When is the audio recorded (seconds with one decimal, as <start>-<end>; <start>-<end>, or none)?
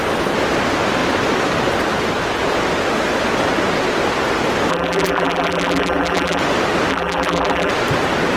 0.0-4.7; 6.4-6.9; 7.7-8.4